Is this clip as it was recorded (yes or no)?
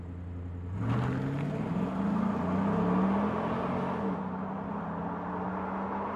yes